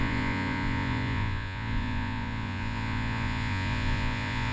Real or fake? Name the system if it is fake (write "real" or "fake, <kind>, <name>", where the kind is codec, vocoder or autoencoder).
fake, vocoder, Vocos